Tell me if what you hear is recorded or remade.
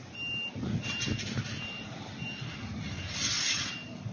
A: recorded